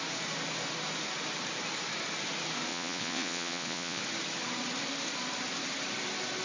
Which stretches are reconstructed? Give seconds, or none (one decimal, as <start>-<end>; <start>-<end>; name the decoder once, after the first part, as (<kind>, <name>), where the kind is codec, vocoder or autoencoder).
2.7-4.0 (vocoder, Vocos)